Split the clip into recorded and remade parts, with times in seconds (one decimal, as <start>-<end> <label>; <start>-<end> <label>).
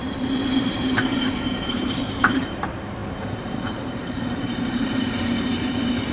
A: 0.0-6.1 remade